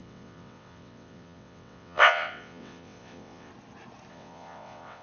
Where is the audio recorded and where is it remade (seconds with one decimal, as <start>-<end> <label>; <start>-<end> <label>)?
0.0-3.5 remade; 3.5-4.1 recorded; 4.1-5.0 remade